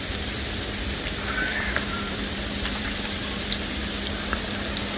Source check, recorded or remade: remade